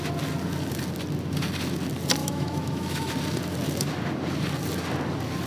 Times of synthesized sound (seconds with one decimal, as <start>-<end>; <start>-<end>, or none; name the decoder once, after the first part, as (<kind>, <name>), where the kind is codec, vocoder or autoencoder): 2.2-3.1 (autoencoder, DAC-VAE)